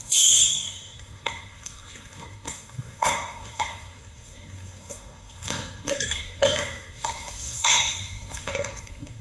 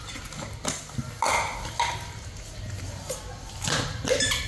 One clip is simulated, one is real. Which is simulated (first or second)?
first